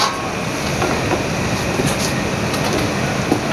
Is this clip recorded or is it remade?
recorded